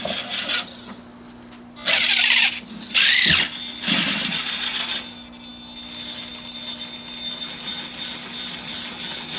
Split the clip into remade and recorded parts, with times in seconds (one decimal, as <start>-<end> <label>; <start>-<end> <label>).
0.0-9.4 recorded